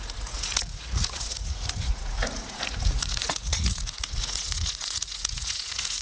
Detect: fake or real fake